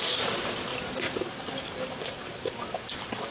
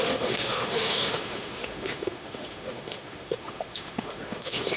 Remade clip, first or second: second